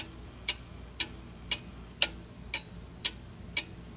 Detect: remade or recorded recorded